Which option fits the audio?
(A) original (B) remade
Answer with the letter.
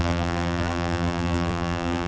B